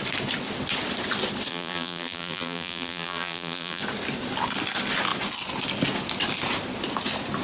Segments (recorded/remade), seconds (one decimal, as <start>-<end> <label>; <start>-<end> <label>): 0.0-1.5 recorded; 1.5-3.8 remade; 3.8-7.4 recorded